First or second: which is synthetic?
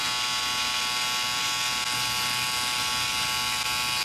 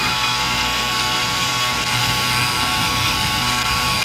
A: second